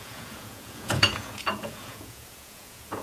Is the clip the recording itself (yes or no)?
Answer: no